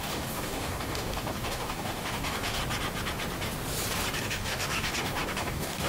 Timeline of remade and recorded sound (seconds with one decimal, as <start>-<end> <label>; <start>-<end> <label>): 0.0-2.6 remade; 2.6-4.2 recorded; 4.2-5.9 remade